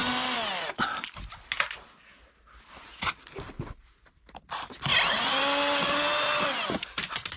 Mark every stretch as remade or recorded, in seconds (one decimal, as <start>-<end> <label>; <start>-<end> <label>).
0.0-7.4 recorded